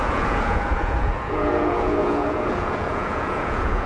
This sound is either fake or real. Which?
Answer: fake